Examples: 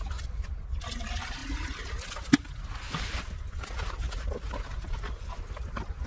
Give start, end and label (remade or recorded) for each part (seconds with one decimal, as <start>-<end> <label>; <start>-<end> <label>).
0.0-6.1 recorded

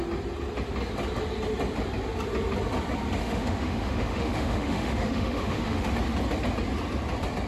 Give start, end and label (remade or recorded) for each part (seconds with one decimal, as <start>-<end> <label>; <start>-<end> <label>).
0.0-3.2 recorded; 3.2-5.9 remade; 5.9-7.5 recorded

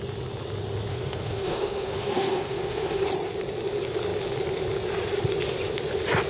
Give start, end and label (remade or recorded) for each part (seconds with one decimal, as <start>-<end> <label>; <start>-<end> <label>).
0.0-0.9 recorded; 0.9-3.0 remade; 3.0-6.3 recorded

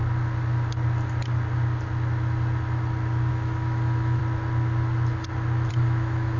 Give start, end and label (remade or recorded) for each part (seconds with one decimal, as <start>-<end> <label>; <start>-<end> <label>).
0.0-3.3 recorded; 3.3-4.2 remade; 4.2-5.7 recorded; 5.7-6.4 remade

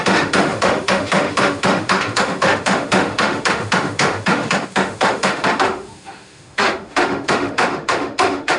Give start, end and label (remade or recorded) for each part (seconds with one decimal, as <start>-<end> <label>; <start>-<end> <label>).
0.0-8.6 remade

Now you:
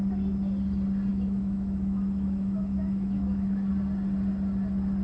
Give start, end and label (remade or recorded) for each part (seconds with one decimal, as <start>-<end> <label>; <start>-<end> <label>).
0.0-1.1 recorded; 1.1-3.7 remade; 3.7-5.0 recorded

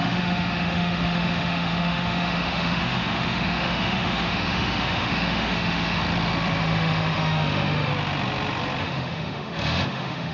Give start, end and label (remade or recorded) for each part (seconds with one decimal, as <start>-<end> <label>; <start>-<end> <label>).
0.0-6.0 remade; 6.0-6.6 recorded; 6.6-7.9 remade; 7.9-8.8 recorded; 8.8-10.3 remade

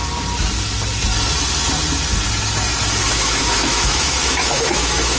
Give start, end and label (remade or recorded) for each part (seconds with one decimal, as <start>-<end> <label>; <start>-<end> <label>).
0.0-3.1 recorded; 3.1-5.2 remade